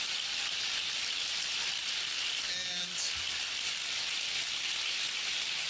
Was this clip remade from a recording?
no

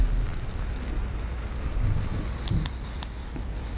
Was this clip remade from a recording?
no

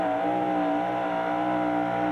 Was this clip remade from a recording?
no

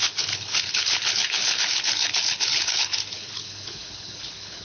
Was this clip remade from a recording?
yes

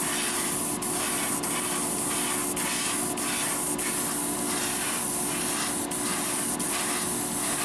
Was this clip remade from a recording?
no